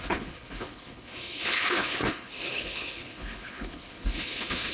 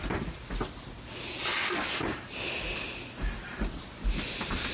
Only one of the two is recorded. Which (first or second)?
second